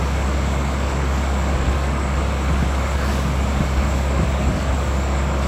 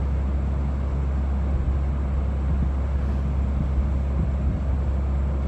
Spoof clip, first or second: first